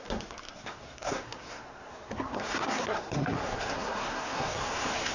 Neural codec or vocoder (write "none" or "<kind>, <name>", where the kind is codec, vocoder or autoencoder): codec, SNAC